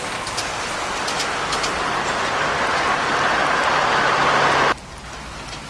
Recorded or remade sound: recorded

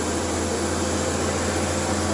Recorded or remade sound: recorded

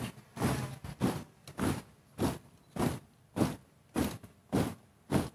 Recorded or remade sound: recorded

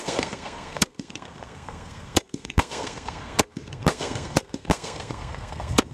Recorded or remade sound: remade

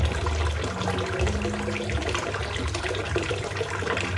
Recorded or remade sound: recorded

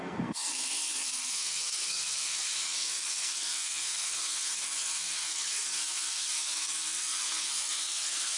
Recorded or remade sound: remade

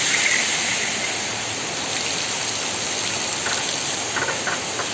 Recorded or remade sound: recorded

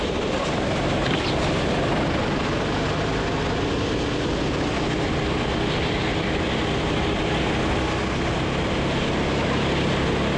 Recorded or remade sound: recorded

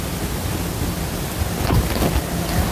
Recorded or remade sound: recorded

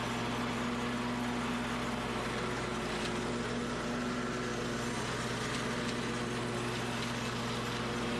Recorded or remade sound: recorded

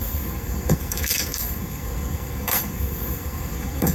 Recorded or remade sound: remade